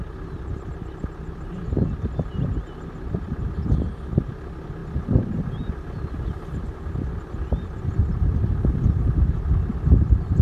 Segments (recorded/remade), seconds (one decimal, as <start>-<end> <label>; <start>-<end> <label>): 0.0-10.4 recorded